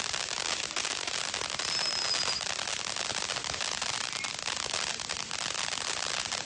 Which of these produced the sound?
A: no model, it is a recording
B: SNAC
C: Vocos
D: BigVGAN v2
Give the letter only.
A